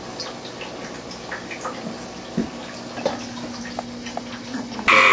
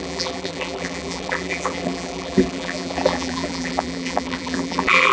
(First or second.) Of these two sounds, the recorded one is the first